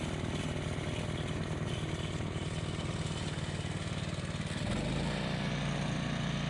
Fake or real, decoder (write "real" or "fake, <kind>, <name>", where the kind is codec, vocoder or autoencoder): real